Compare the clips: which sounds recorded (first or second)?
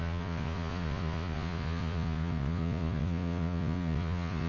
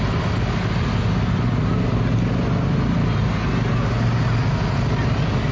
second